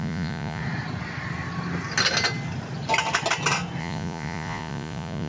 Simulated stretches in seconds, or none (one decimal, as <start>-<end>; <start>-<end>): 0.0-0.6; 3.8-5.3